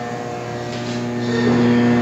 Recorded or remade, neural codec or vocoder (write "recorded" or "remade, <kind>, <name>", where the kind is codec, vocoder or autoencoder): recorded